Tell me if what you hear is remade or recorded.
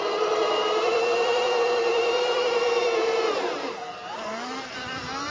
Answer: remade